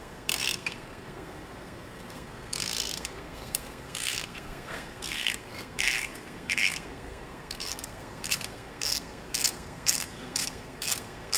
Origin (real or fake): fake